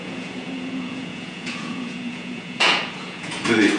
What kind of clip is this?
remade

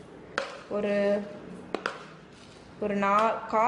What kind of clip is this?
recorded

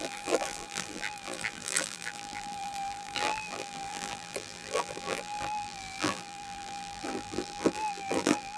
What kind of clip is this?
remade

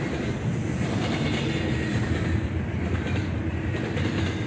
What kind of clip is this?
recorded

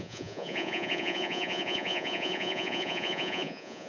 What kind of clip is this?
remade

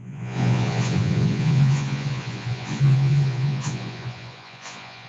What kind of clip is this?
remade